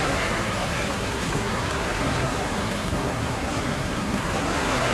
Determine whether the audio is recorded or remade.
remade